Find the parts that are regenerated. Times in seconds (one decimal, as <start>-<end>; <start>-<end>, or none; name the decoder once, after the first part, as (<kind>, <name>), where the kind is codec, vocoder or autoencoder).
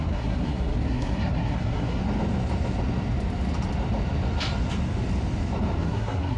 0.0-2.0 (codec, SNAC); 5.8-6.4